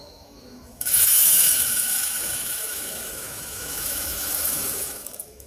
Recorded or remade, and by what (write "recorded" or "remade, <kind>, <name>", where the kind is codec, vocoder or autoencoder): remade, autoencoder, DAC-VAE